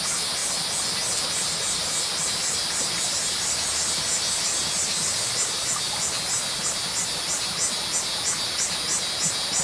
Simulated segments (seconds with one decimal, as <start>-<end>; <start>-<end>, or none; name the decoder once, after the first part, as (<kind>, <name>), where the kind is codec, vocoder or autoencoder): none